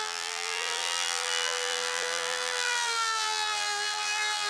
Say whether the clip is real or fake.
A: fake